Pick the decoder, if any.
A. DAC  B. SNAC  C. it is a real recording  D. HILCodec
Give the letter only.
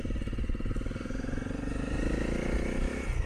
C